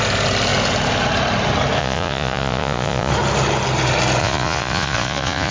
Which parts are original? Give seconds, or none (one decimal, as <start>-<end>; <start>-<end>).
0.0-1.8; 3.1-4.2